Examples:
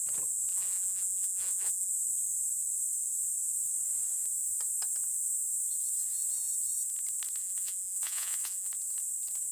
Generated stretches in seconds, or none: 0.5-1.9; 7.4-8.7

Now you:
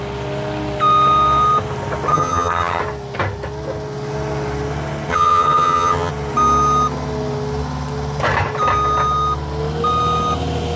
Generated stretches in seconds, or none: 2.1-2.8; 5.1-6.1

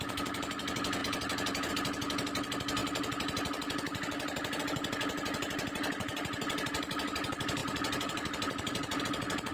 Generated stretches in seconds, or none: 1.0-1.7; 7.6-9.0

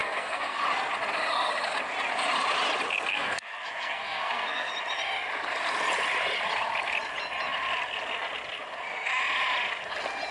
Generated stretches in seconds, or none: 0.0-0.6; 3.1-4.7